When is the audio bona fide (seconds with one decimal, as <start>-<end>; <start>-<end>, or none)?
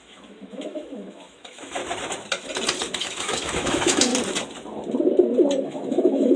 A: 1.8-3.0; 4.1-5.6